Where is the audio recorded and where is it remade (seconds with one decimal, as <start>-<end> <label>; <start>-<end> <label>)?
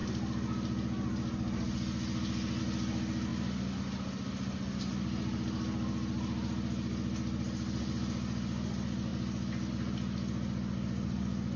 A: 0.0-11.6 recorded